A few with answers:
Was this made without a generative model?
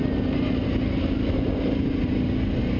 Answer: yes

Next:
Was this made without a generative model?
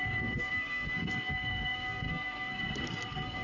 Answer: no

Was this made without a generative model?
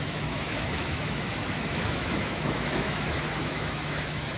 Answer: no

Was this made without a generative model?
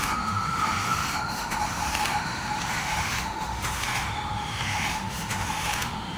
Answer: no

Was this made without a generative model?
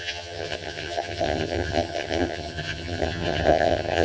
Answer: no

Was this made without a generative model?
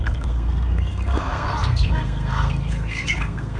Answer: no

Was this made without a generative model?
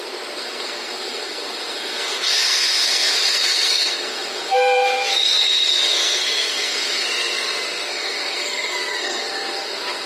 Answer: no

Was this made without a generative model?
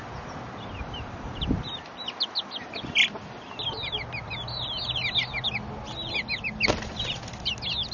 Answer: yes